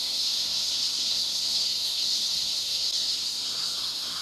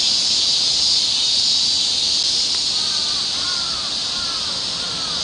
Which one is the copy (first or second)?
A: first